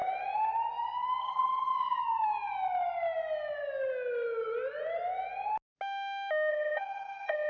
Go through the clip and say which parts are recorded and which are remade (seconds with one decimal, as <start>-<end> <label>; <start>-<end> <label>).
0.0-1.2 recorded; 1.2-2.0 remade; 2.0-6.5 recorded; 6.5-7.5 remade